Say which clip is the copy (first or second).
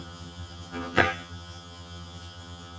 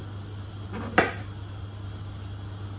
first